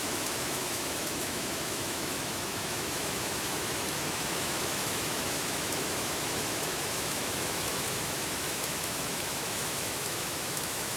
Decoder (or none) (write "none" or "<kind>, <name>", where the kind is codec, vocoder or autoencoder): autoencoder, DAC-VAE